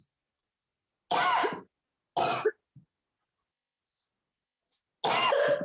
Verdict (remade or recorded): recorded